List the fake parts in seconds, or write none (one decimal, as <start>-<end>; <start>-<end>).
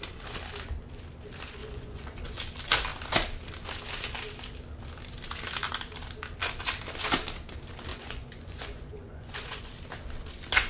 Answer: 1.6-2.4; 7.9-9.7